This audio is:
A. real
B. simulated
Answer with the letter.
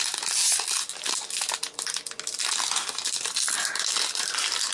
A